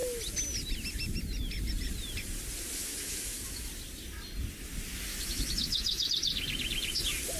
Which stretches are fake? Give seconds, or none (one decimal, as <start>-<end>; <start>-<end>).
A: 2.8-3.7; 5.1-6.1